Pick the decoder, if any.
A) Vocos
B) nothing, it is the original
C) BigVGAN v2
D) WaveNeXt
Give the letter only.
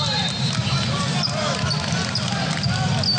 B